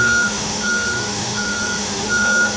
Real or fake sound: fake